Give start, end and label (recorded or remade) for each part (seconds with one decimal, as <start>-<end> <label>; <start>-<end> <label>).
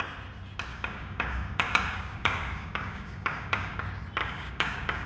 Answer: 0.0-0.7 recorded; 0.7-3.8 remade; 3.8-4.2 recorded; 4.2-5.1 remade